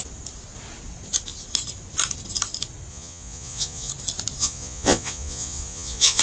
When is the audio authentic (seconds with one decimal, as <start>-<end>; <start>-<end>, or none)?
0.0-2.9; 3.9-4.4